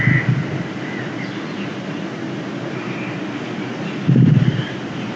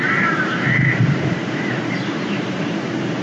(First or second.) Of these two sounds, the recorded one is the first